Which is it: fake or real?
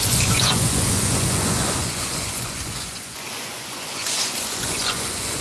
fake